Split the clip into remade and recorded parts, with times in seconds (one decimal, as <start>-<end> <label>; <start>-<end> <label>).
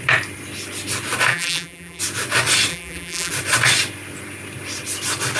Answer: 0.0-1.3 recorded; 1.3-2.0 remade; 2.0-2.7 recorded; 2.7-3.3 remade; 3.3-5.4 recorded